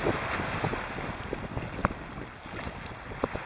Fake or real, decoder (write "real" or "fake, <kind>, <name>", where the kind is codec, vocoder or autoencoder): real